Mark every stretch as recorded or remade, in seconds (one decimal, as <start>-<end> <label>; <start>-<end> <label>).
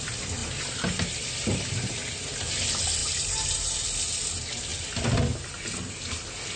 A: 0.0-0.4 recorded; 0.4-1.0 remade; 1.0-3.0 recorded; 3.0-3.7 remade; 3.7-6.6 recorded